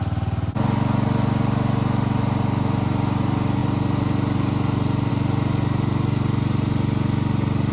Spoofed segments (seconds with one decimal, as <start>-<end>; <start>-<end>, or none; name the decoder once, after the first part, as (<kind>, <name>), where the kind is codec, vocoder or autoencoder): none